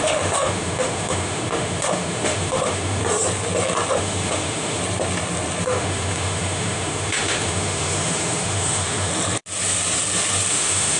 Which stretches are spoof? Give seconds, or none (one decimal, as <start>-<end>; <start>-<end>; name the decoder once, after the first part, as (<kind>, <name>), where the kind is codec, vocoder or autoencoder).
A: 0.0-3.0 (autoencoder, DAC-VAE); 3.9-4.8; 5.6-9.1; 10.5-11.0